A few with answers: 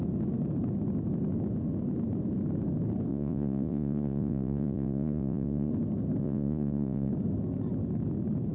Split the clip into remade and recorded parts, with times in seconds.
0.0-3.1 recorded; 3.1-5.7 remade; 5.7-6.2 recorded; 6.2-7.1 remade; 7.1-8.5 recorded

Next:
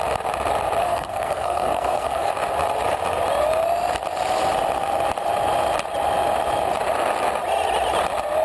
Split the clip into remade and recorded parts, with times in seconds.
0.0-0.8 recorded; 0.8-2.3 remade; 2.3-8.4 recorded

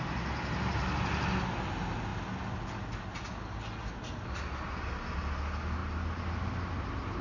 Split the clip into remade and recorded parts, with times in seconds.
0.0-7.2 recorded

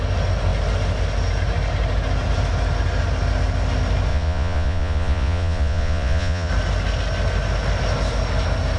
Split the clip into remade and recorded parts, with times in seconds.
0.0-4.1 recorded; 4.1-6.5 remade; 6.5-8.8 recorded

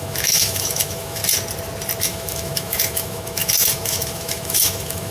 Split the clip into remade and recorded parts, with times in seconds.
0.0-1.2 remade; 1.2-2.0 recorded; 2.0-5.1 remade

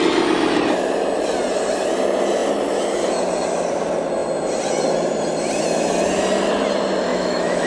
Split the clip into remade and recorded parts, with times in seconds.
0.0-7.1 recorded; 7.1-7.7 remade